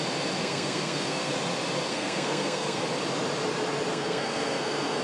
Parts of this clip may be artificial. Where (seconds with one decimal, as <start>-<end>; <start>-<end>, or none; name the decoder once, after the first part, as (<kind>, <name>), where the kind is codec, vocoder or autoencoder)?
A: 0.4-1.3 (codec, SNAC); 1.9-2.8; 3.9-5.0

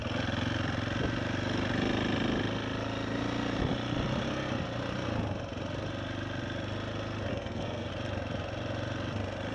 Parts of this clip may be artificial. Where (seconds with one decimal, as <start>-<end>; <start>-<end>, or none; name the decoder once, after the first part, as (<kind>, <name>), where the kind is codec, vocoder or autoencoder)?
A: 7.3-7.9 (codec, SNAC)